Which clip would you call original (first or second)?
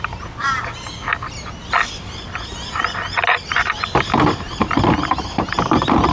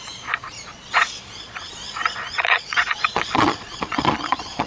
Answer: first